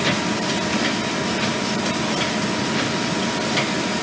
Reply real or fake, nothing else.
real